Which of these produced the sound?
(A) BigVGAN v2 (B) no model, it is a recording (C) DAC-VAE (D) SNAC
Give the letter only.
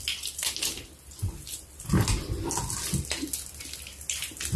B